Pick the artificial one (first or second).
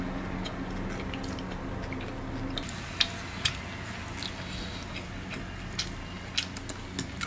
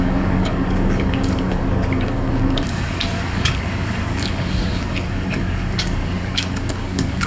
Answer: second